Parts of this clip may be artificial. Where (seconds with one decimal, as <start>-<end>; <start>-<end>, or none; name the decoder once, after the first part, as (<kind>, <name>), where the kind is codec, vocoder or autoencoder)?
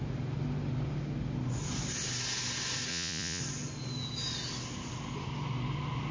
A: 2.9-3.4 (vocoder, Vocos)